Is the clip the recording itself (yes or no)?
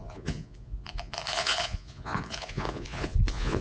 no